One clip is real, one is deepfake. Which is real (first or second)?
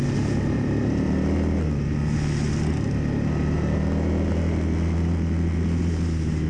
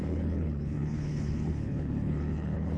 first